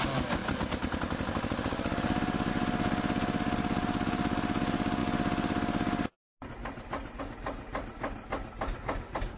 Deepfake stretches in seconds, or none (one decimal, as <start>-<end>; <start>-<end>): none